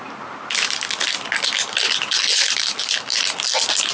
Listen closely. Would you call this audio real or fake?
real